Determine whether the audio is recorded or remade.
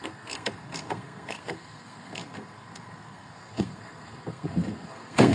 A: remade